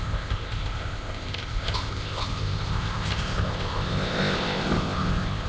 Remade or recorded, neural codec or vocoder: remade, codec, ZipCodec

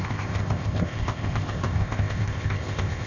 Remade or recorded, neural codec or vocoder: remade, codec, ZipCodec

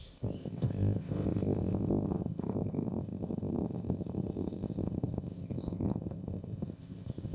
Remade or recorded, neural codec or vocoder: remade, codec, ZipCodec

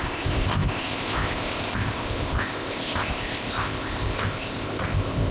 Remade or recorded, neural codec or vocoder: remade, codec, ZipCodec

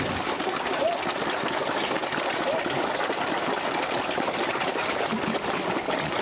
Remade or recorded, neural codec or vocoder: recorded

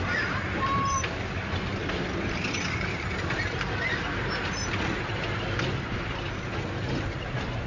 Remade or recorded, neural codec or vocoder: recorded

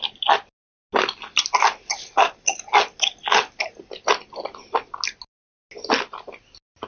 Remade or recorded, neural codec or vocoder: recorded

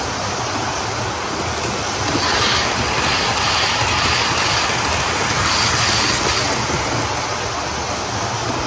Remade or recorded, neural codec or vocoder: recorded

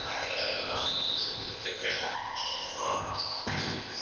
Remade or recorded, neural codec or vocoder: remade, codec, ZipCodec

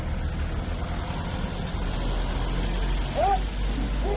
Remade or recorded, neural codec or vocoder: recorded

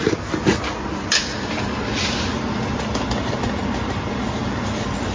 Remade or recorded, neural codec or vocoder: recorded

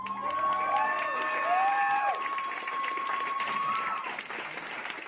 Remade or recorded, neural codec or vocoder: recorded